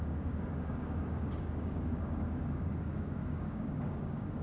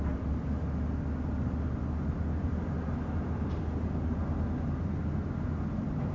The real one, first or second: second